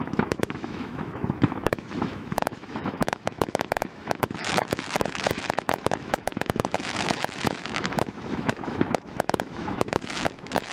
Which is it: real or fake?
fake